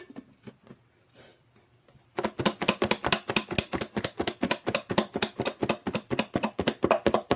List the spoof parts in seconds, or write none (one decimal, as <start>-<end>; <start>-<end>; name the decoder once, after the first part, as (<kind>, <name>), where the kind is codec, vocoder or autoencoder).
none